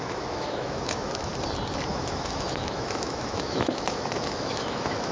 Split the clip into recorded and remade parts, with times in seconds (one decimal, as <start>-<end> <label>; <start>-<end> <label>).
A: 0.0-1.3 remade; 1.3-1.9 recorded; 1.9-5.1 remade